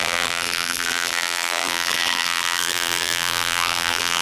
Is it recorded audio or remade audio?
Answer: remade